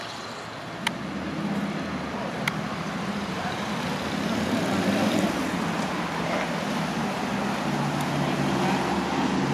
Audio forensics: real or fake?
real